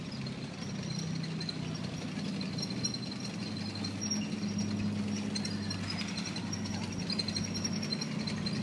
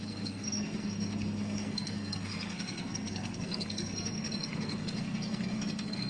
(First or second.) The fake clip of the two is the second